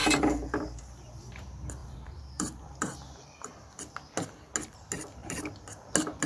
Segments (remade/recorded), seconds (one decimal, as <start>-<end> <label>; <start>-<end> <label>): 0.0-1.3 remade; 1.3-1.8 recorded; 1.8-3.5 remade; 3.5-6.3 recorded